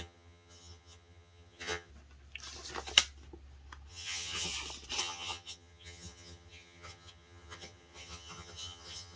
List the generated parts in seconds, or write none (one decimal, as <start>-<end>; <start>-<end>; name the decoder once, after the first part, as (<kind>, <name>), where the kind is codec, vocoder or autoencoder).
0.0-1.9 (vocoder, HiFi-GAN); 3.9-4.5; 5.0-9.2